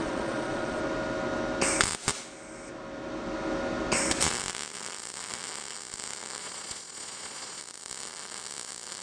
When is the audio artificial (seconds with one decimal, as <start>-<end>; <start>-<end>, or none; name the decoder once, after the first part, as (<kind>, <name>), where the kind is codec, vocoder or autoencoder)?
0.0-0.8 (vocoder, Vocos); 6.4-7.6